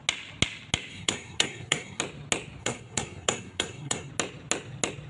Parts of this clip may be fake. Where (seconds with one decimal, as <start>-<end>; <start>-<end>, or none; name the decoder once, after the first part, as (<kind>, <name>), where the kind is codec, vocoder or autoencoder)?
0.9-2.0 (codec, SNAC); 2.6-4.1